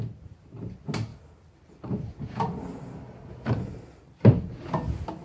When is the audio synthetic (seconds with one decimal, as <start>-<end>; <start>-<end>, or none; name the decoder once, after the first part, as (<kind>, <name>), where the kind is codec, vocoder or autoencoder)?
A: none